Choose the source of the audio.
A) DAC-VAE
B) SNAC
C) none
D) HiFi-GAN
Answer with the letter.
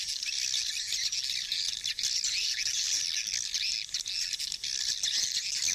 C